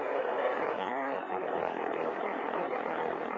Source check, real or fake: fake